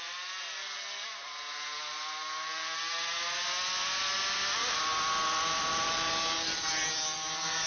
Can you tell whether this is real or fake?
real